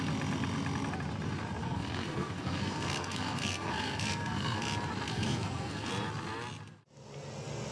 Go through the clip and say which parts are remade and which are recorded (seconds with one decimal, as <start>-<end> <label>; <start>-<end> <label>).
0.0-1.6 recorded; 1.6-4.6 remade; 4.6-5.1 recorded; 5.1-5.9 remade; 5.9-7.7 recorded